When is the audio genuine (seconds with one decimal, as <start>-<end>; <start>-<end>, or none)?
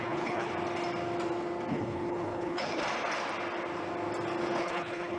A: 0.5-1.7; 2.8-4.6